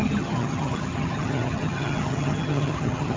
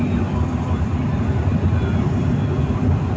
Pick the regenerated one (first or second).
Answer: first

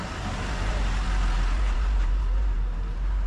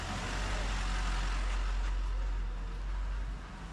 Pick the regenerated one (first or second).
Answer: first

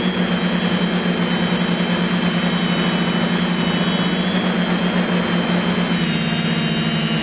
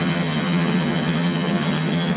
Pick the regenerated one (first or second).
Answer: second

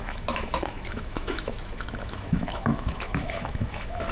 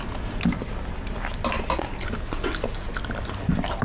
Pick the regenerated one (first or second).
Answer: first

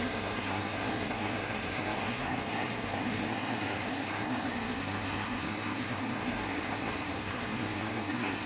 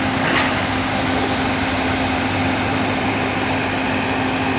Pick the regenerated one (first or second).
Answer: first